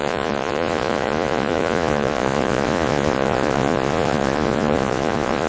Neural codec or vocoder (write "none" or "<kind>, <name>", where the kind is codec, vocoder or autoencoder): vocoder, Vocos